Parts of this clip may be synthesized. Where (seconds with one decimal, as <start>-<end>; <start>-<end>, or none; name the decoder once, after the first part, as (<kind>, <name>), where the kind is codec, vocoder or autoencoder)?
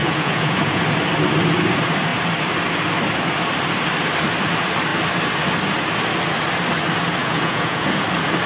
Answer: 0.0-0.8 (vocoder, Vocos); 7.2-8.0